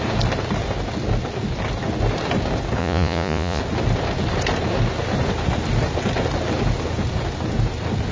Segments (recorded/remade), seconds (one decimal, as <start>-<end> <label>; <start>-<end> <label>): 0.0-2.8 recorded; 2.8-3.6 remade; 3.6-8.1 recorded

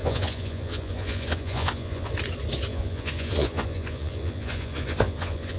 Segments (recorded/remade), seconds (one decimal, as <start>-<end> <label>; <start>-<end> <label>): 0.0-2.1 remade; 2.1-2.7 recorded; 2.7-5.6 remade

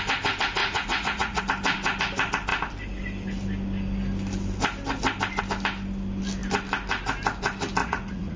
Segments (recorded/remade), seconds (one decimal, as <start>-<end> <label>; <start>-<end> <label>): 0.0-0.6 recorded; 0.6-1.4 remade; 1.4-7.8 recorded; 7.8-8.4 remade

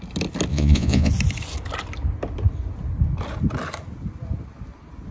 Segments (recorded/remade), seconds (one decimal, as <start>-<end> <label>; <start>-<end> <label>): 0.0-0.5 recorded; 0.5-1.1 remade; 1.1-5.1 recorded

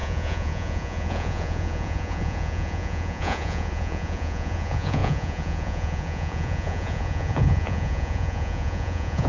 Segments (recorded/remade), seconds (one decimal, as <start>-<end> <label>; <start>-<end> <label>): 0.0-9.3 remade

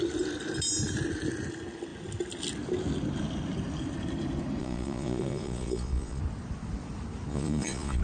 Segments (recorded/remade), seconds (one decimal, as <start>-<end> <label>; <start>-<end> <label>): 0.0-4.6 recorded; 4.6-6.2 remade; 6.2-7.3 recorded; 7.3-8.0 remade